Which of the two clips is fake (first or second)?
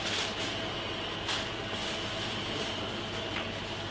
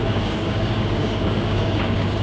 second